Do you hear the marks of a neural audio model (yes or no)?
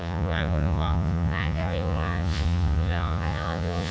yes